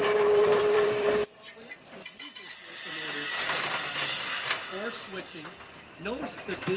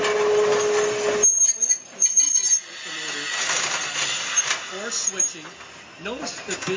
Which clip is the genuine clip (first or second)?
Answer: second